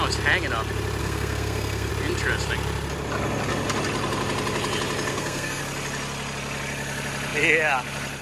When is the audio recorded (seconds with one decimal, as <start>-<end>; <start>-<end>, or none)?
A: 0.0-1.0; 1.9-5.1; 5.6-8.2